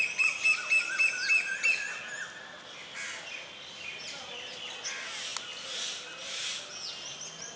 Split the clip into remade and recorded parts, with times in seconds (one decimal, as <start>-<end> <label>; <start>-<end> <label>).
0.0-7.6 recorded